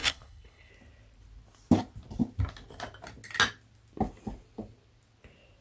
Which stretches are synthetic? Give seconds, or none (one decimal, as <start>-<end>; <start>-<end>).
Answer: 0.0-0.7